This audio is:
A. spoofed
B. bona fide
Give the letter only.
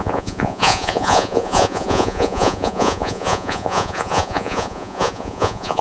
A